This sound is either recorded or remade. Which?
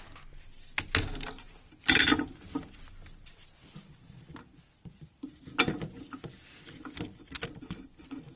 recorded